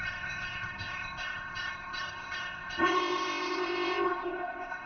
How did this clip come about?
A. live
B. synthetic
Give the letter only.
B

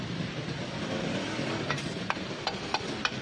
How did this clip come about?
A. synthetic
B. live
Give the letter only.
B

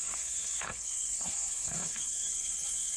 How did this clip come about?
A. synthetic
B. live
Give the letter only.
A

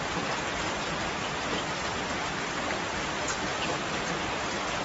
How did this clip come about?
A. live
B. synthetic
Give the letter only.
A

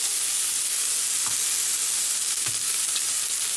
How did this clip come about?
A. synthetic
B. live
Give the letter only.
B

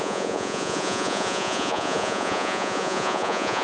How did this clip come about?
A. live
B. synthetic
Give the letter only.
B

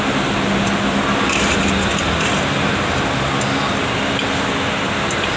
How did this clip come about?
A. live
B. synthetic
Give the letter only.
A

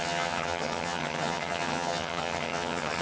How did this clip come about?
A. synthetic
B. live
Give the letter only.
A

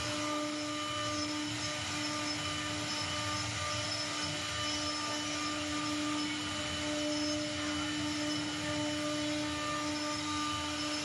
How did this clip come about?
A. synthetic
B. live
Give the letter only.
B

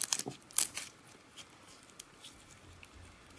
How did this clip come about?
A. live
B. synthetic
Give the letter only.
A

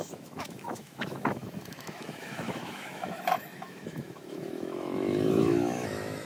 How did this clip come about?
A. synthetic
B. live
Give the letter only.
A